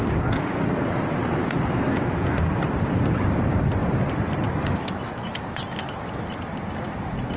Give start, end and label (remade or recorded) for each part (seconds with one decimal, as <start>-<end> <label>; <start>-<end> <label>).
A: 0.0-1.2 remade; 1.2-2.5 recorded; 2.5-7.4 remade